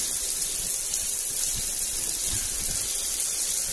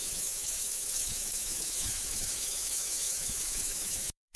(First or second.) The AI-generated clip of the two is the second